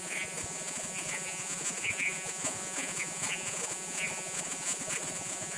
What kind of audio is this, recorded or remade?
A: remade